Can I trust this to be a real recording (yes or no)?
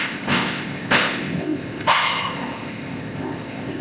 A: no